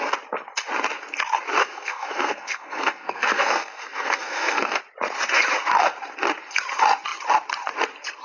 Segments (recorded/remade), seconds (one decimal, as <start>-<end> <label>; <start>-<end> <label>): 0.0-1.6 recorded; 1.6-4.8 remade; 4.8-8.2 recorded